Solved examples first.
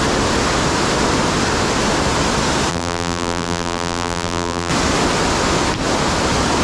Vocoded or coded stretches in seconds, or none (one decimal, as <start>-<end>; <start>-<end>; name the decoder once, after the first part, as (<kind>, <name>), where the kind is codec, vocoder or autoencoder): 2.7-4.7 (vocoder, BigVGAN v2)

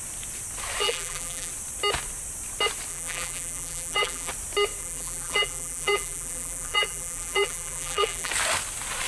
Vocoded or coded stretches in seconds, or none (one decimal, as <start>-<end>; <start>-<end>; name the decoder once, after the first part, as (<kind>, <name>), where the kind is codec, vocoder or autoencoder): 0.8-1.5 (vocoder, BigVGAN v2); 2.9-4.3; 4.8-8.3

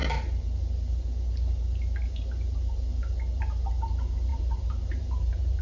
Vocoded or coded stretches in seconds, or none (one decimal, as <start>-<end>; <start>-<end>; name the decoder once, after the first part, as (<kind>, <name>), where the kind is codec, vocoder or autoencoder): 4.3-5.6 (vocoder, BigVGAN v2)

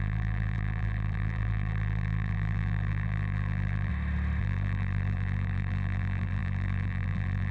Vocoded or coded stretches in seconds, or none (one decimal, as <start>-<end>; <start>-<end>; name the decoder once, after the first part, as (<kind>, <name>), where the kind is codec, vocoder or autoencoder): 0.0-3.9 (vocoder, BigVGAN v2); 4.4-7.5

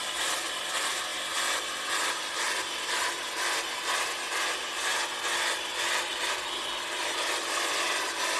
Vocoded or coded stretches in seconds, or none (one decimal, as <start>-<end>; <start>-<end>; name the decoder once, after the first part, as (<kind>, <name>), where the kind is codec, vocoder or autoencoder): 0.0-1.1 (vocoder, BigVGAN v2); 2.2-4.9; 6.2-8.4

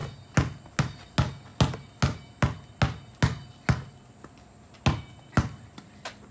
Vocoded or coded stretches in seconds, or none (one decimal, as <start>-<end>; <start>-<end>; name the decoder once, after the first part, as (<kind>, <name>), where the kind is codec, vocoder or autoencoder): none